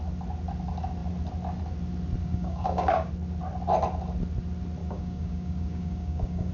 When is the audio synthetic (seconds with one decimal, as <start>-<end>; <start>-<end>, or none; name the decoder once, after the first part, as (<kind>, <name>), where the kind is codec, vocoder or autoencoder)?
2.2-3.1 (codec, DAC); 4.8-6.5